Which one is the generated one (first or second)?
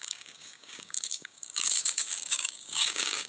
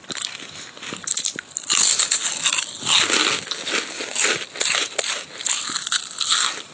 first